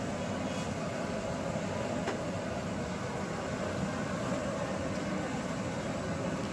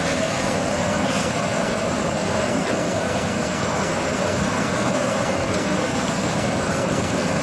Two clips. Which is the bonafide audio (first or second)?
first